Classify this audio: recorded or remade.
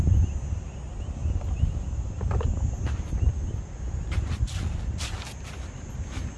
recorded